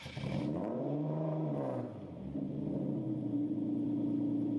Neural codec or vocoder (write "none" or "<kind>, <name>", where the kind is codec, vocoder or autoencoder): vocoder, BigVGAN v2